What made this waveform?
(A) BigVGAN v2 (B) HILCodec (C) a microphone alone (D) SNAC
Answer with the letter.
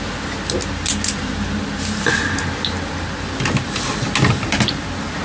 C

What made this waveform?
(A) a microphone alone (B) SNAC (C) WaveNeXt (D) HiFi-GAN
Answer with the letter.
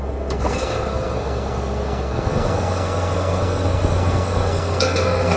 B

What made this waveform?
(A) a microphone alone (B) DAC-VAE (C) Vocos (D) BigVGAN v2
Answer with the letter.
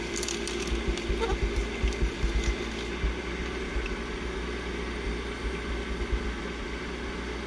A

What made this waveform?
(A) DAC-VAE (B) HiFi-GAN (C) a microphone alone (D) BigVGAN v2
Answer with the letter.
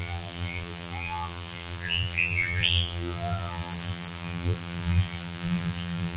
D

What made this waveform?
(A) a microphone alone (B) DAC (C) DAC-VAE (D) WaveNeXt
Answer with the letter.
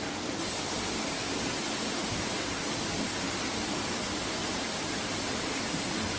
A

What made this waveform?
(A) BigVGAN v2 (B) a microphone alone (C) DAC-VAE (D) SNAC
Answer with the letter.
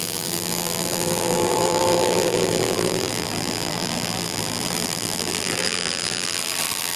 A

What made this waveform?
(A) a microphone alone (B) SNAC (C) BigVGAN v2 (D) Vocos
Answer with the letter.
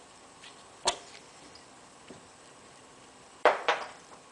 C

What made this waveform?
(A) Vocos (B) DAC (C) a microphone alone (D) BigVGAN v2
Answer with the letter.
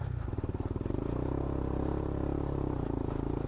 D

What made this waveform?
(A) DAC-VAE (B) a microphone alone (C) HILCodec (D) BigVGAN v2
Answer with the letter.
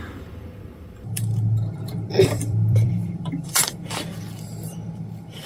D